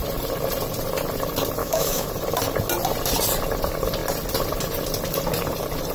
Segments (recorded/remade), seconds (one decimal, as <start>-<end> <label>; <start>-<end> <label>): 0.0-1.6 recorded; 1.6-2.1 remade; 2.1-5.9 recorded